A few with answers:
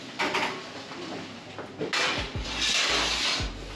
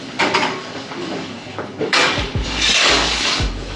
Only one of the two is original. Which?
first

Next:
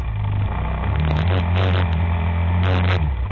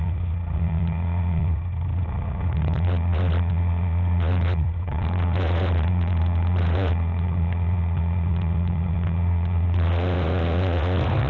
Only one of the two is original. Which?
first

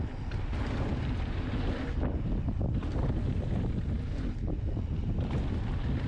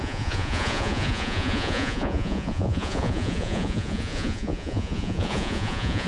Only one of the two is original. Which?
first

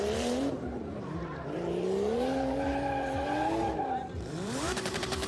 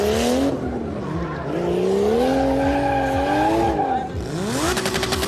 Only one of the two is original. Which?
second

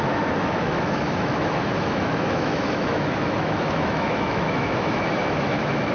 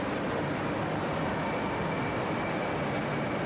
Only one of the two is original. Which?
second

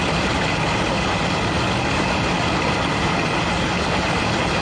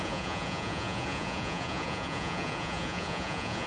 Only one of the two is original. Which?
first